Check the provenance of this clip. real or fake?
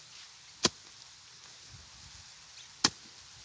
real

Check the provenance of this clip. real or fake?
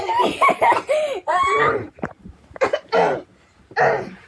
fake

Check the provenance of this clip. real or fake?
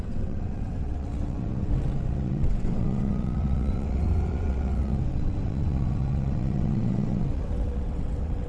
fake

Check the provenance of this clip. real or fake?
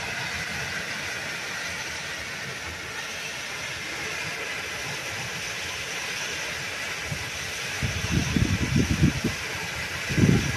real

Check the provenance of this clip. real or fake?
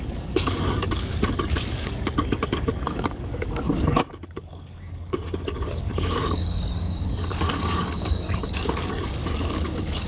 fake